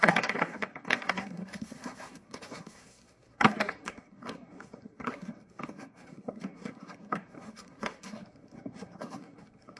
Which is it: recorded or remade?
remade